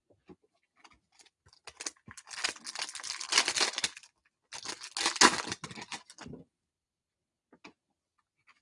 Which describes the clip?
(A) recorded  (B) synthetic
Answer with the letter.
A